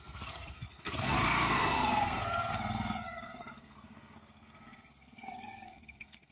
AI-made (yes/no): yes